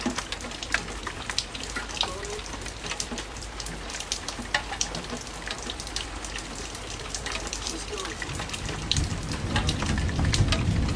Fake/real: fake